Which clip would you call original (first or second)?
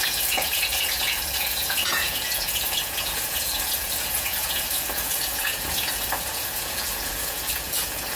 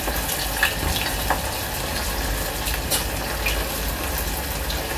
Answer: second